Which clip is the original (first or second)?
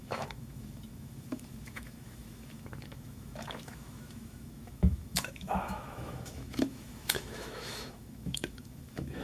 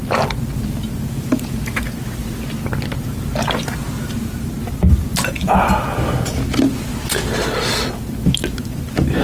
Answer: second